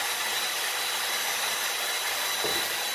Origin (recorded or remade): recorded